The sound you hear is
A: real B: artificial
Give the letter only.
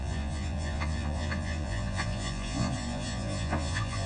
B